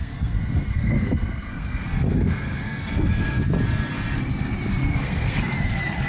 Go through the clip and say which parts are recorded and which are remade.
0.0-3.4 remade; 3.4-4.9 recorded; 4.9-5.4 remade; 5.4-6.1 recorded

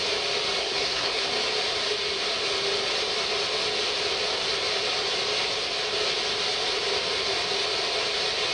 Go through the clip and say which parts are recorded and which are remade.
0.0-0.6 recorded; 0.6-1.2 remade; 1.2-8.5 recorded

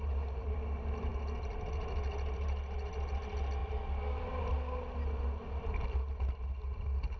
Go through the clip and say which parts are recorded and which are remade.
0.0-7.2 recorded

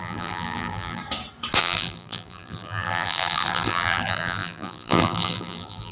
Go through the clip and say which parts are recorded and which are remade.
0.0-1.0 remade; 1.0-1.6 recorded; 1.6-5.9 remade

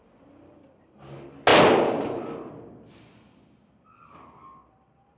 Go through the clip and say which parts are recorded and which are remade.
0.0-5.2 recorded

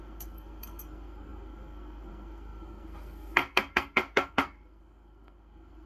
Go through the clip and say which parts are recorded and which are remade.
0.0-5.9 remade

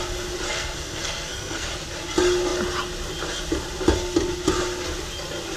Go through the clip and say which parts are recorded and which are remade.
0.0-0.5 recorded; 0.5-1.7 remade; 1.7-5.6 recorded

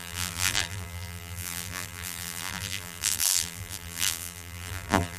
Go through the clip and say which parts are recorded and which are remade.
0.0-5.2 remade